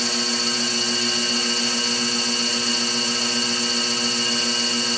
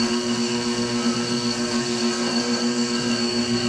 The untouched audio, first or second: first